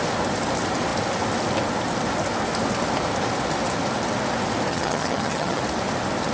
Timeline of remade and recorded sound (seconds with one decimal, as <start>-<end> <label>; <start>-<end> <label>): 0.0-4.7 recorded; 4.7-5.6 remade; 5.6-6.3 recorded